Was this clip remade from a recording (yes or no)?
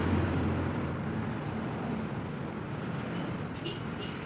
no